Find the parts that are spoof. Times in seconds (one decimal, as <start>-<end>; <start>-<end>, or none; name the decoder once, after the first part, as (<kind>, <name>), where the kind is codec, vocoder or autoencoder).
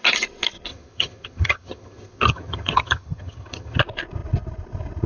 0.7-3.8 (vocoder, HiFi-GAN)